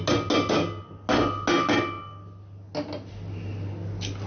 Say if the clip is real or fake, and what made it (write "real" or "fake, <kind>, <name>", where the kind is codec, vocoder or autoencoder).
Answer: real